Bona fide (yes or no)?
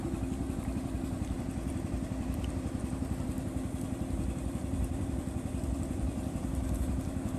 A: no